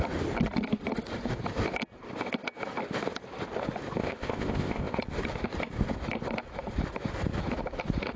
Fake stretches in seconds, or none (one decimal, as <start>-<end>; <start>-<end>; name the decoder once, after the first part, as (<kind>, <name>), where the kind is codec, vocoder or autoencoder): 4.0-5.0 (codec, ZipCodec)